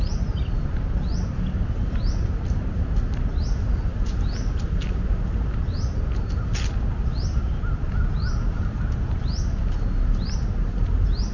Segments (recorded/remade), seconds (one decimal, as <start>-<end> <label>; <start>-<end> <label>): 0.0-11.3 recorded